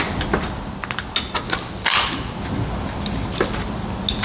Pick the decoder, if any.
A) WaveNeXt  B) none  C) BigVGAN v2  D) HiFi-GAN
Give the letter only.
B